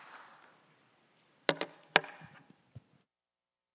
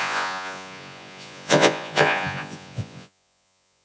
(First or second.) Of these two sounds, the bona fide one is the first